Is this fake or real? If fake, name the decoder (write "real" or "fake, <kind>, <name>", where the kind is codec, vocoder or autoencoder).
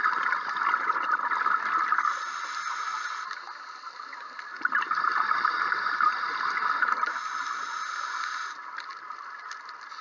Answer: real